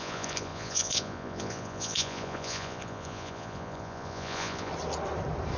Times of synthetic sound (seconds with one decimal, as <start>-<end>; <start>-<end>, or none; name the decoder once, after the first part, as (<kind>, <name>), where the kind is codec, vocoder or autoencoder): 0.0-4.7 (vocoder, Vocos)